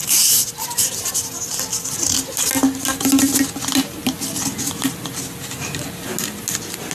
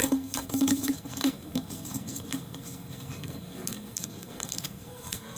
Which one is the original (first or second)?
first